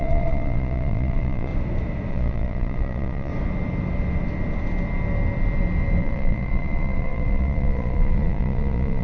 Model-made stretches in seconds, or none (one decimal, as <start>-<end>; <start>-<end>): 0.0-1.5; 2.1-3.3; 6.0-9.0